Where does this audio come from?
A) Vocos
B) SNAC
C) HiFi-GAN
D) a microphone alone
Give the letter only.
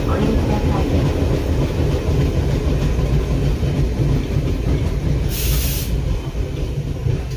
D